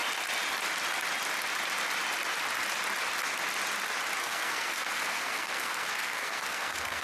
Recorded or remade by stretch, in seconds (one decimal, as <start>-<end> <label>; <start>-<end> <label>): 0.0-4.2 recorded; 4.2-7.0 remade